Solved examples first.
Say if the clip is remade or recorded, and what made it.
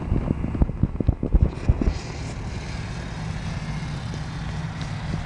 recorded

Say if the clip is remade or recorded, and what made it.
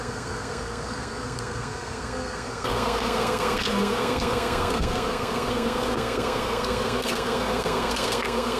remade, codec, SNAC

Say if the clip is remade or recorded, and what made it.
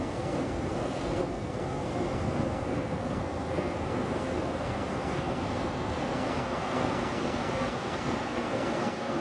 remade, codec, SNAC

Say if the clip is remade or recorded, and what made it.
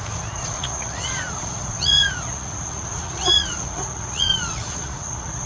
remade, vocoder, Vocos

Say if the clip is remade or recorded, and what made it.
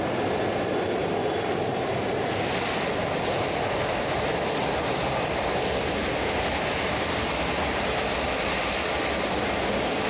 recorded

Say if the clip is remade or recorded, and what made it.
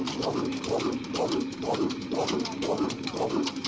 remade, vocoder, BigVGAN v2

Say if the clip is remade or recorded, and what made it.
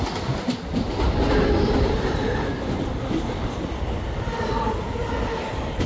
recorded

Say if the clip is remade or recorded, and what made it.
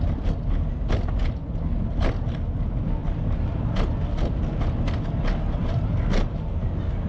recorded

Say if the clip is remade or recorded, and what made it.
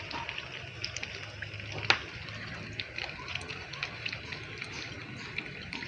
recorded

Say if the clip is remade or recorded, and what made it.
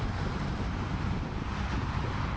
recorded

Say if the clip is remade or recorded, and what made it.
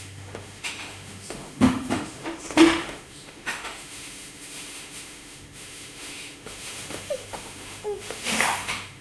remade, autoencoder, DAC-VAE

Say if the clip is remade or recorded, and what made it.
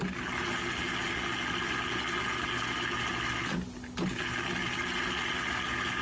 recorded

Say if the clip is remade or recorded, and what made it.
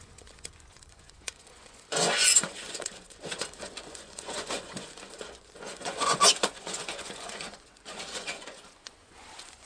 remade, vocoder, Vocos